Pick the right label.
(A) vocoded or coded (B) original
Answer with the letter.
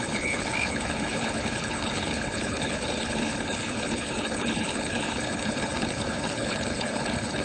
A